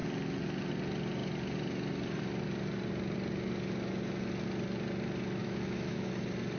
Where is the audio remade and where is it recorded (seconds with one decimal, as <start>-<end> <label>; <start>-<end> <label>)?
0.0-5.4 recorded; 5.4-6.1 remade; 6.1-6.6 recorded